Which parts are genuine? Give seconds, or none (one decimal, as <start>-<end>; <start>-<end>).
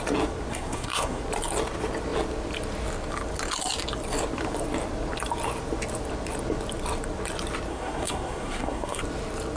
0.0-0.5; 1.2-7.7; 9.0-9.6